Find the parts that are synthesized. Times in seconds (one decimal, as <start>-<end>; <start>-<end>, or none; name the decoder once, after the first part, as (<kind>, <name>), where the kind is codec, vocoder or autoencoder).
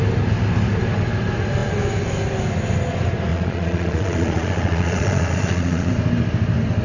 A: 3.3-5.9 (vocoder, Vocos)